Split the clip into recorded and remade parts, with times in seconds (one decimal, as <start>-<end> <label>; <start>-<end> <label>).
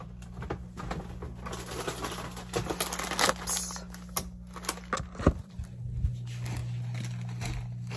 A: 0.0-8.0 recorded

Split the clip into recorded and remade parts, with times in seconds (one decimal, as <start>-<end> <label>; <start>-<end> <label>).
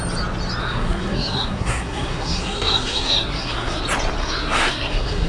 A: 0.0-0.6 recorded; 0.6-3.8 remade; 3.8-4.2 recorded; 4.2-5.3 remade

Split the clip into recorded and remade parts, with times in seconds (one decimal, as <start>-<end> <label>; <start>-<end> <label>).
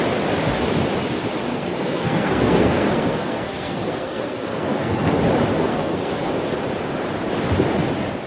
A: 0.0-1.5 recorded; 1.5-5.1 remade; 5.1-5.5 recorded; 5.5-6.3 remade; 6.3-8.3 recorded